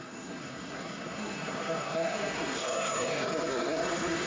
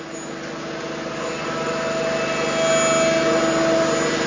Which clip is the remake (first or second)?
first